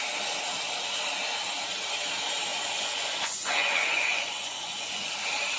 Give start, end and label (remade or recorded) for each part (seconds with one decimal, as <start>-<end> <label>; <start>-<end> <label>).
0.0-2.5 recorded; 2.5-5.1 remade; 5.1-5.6 recorded